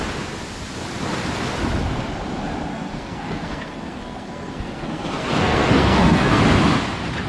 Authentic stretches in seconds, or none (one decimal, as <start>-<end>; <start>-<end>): 0.0-2.7; 6.4-7.3